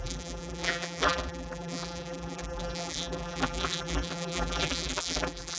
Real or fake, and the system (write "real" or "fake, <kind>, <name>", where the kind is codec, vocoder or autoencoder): fake, vocoder, BigVGAN v2